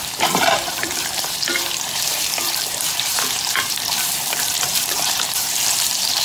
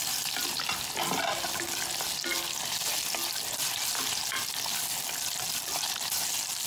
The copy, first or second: first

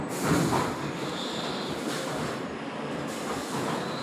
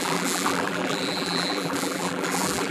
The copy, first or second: second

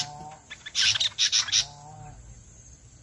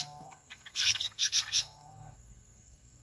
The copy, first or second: second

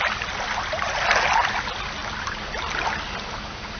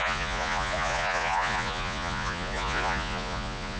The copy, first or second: second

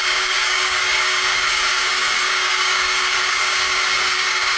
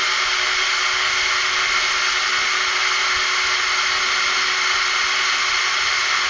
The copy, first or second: first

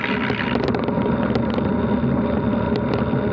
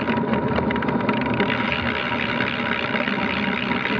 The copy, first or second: second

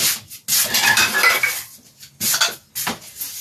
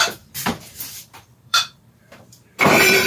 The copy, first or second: second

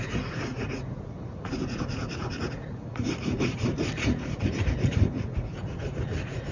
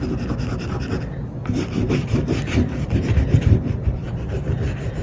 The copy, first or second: first